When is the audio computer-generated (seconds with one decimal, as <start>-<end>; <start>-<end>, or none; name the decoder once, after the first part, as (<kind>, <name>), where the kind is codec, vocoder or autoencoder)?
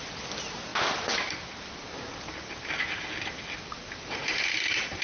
none